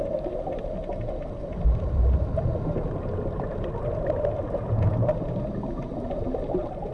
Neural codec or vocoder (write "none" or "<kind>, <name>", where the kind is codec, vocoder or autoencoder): none